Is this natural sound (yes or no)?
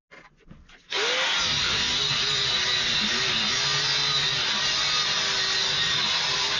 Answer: yes